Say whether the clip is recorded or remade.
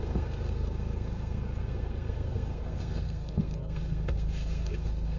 remade